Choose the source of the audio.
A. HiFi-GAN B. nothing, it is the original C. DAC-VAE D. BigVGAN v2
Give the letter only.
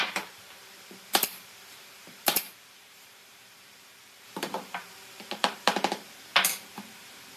D